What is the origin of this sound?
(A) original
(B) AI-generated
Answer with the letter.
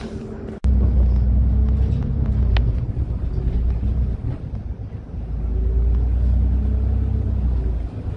A